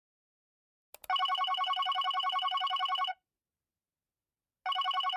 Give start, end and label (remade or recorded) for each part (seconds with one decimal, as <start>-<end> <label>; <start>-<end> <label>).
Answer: 0.0-5.2 recorded